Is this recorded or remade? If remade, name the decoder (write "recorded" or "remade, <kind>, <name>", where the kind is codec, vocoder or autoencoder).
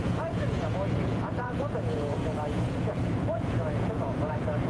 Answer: remade, vocoder, Vocos